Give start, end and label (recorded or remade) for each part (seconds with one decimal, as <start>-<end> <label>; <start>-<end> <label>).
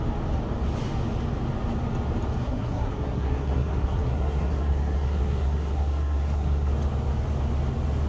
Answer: 0.0-2.4 recorded; 2.4-6.7 remade; 6.7-8.1 recorded